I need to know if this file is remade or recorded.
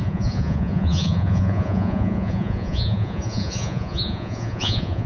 remade